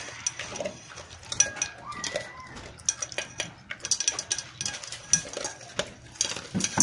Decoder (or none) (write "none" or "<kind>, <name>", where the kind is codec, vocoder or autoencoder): none